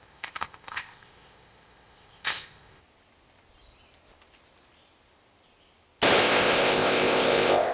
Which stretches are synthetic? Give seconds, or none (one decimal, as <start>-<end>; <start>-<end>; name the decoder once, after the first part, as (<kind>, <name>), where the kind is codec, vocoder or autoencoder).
0.0-2.8 (codec, ZipCodec); 6.2-7.7

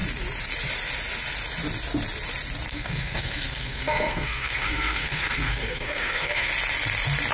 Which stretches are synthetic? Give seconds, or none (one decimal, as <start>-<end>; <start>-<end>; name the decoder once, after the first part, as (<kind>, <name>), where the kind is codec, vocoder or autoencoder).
2.7-6.5 (codec, SNAC)

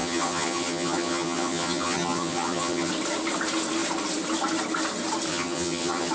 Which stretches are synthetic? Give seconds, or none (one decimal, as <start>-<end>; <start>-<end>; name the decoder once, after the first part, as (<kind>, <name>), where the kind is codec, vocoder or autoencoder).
0.0-2.9 (vocoder, HiFi-GAN); 5.3-6.1

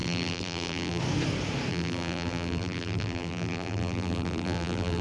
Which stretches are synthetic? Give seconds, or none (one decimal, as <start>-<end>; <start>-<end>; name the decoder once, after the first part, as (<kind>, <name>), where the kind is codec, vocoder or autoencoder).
0.0-1.0 (vocoder, BigVGAN v2); 1.7-5.0

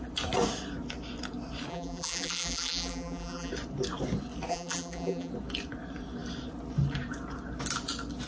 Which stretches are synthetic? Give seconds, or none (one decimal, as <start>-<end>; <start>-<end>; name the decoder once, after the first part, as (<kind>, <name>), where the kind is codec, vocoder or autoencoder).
1.7-3.5 (vocoder, BigVGAN v2); 4.5-5.3